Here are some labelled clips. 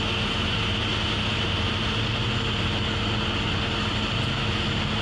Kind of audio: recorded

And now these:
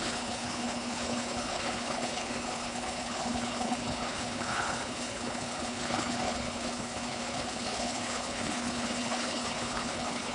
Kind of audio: remade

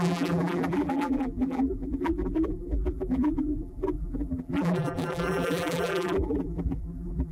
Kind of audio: remade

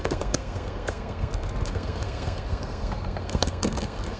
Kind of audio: remade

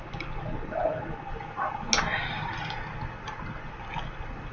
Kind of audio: recorded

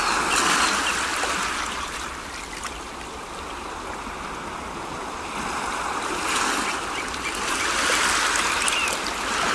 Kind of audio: recorded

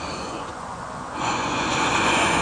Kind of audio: remade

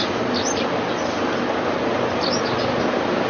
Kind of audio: recorded